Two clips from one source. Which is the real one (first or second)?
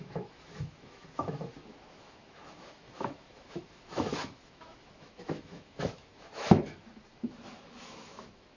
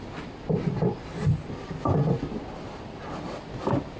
second